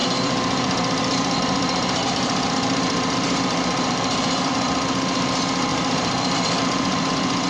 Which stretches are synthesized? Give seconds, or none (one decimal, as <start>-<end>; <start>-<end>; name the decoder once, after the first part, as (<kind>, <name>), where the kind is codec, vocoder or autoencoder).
0.0-4.5 (vocoder, BigVGAN v2); 5.7-7.1